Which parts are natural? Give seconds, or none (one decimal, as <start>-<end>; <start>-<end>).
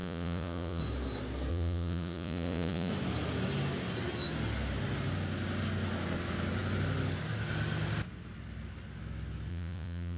0.8-1.5; 2.9-9.5